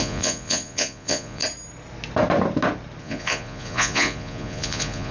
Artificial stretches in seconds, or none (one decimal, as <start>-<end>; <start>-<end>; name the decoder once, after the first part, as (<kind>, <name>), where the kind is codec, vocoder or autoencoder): 0.0-1.4 (vocoder, Vocos); 3.0-5.1